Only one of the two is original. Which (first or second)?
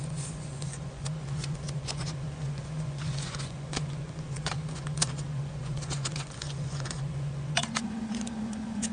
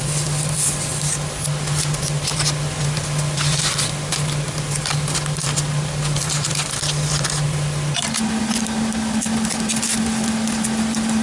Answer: second